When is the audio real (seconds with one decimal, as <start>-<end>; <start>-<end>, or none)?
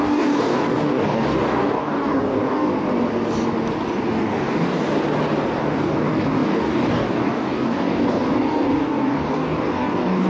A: 2.7-4.1; 4.8-5.6